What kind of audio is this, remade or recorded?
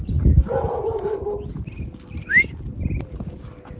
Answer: recorded